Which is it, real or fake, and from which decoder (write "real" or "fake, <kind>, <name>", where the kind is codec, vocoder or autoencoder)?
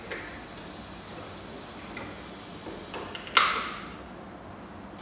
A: real